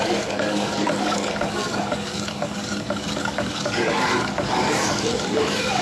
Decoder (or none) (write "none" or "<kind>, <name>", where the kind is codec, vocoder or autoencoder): codec, DAC